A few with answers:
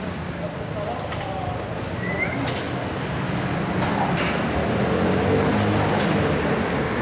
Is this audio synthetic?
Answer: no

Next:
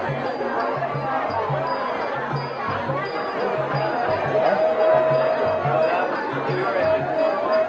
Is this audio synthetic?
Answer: no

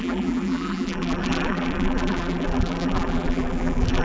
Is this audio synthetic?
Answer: yes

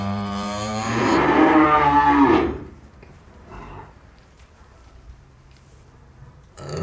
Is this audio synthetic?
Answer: yes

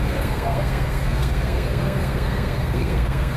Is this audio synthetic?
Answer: yes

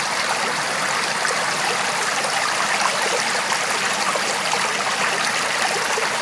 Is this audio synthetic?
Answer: no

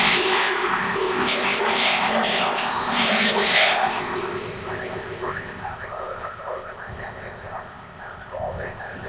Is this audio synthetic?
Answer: yes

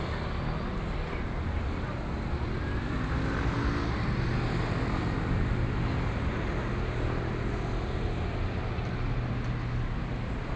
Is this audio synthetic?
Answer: no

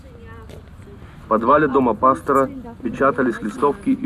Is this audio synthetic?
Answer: no